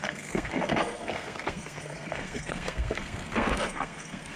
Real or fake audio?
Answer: fake